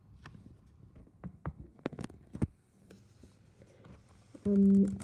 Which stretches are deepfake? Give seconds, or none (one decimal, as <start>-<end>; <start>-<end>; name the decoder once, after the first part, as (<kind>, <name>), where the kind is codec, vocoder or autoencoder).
1.0-2.9 (codec, SNAC)